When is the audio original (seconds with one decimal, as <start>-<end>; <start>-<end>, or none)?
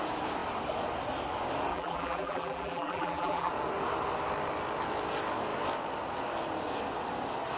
0.0-1.7; 3.5-7.6